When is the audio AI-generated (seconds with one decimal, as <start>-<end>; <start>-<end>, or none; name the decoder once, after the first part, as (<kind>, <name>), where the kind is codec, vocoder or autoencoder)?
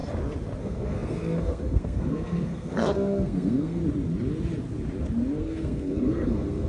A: 0.6-3.8 (codec, SNAC); 5.4-6.7